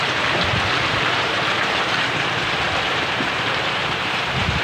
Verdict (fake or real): fake